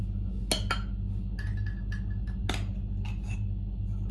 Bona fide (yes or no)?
yes